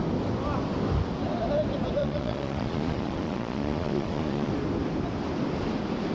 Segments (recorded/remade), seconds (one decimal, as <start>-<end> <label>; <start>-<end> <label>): 0.0-2.0 recorded; 2.0-4.5 remade; 4.5-6.1 recorded